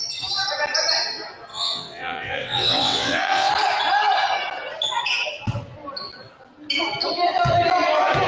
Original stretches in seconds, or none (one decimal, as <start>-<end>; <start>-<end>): 0.0-1.5; 3.5-8.3